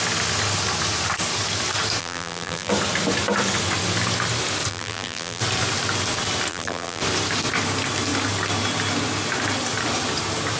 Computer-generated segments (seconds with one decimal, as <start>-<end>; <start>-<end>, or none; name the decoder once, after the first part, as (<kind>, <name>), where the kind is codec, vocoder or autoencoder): 2.0-2.7 (vocoder, BigVGAN v2); 4.7-5.4; 6.5-7.0